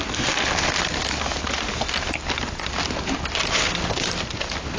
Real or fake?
real